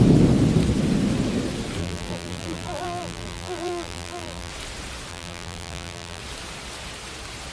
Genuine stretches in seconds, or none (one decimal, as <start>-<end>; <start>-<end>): 0.0-1.8; 4.5-5.1; 6.2-7.5